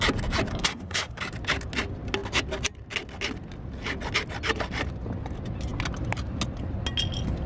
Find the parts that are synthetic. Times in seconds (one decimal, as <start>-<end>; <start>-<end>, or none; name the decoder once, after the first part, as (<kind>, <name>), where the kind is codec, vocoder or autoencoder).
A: 0.5-1.2 (codec, SNAC)